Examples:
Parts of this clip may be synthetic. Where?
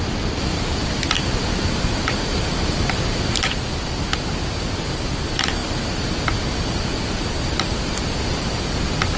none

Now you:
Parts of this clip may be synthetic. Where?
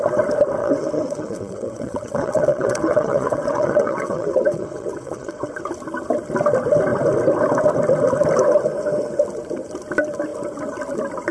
0.6-5.7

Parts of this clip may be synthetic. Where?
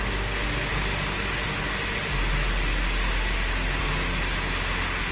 none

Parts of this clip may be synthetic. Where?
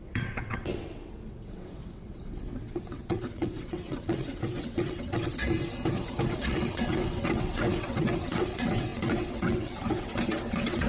0.0-5.4; 6.1-10.9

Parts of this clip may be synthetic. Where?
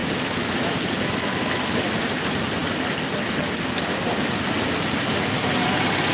none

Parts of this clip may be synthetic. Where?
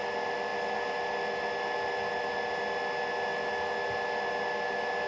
none